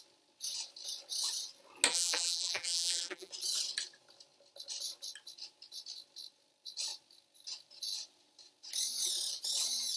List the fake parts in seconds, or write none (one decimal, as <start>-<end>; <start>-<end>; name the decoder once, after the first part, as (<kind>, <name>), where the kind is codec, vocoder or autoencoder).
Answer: 1.9-3.3 (vocoder, BigVGAN v2)